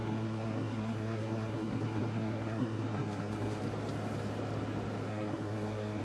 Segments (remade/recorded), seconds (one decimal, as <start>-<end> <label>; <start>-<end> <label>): 0.0-3.6 remade; 3.6-5.1 recorded; 5.1-6.0 remade